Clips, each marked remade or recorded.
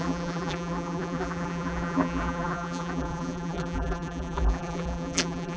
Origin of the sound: remade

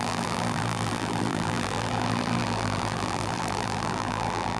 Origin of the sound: remade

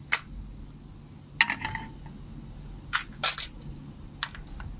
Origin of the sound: recorded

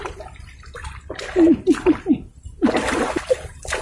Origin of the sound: recorded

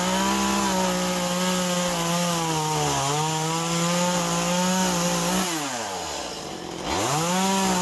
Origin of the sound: recorded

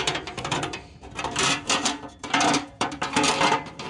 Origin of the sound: remade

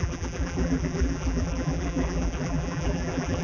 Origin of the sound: remade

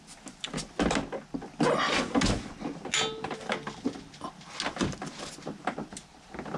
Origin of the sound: recorded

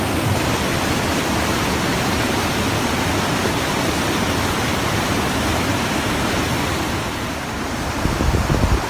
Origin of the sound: recorded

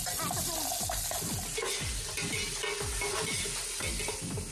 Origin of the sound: recorded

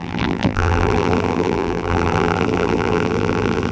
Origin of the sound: remade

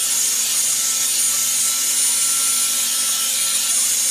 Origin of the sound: recorded